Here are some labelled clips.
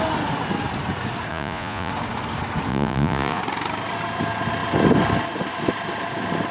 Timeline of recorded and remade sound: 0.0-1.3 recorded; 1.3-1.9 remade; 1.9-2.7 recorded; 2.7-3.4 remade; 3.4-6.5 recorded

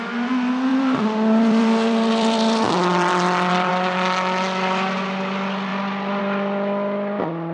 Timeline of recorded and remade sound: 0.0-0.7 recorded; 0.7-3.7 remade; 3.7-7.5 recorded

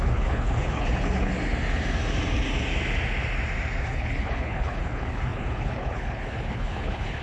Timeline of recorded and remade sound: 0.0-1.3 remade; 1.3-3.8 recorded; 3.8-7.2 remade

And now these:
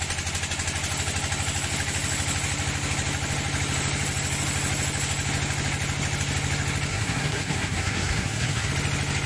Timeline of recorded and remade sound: 0.0-6.9 recorded; 6.9-8.7 remade; 8.7-9.3 recorded

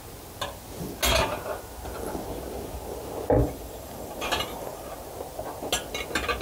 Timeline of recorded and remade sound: 0.0-3.4 recorded; 3.4-4.8 remade; 4.8-6.4 recorded

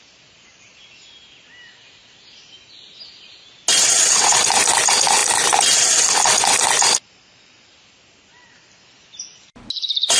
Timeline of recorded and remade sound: 0.0-3.9 recorded; 3.9-4.4 remade; 4.4-10.2 recorded

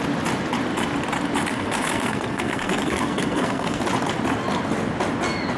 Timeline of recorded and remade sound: 0.0-1.5 recorded; 1.5-3.8 remade; 3.8-5.6 recorded

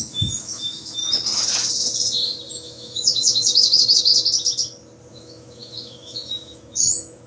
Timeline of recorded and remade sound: 0.0-1.0 remade; 1.0-2.5 recorded; 2.5-4.1 remade; 4.1-5.1 recorded; 5.1-7.3 remade